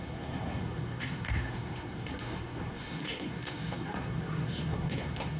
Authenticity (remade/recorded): remade